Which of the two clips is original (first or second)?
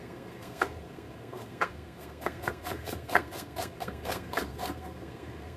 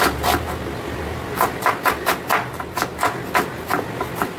second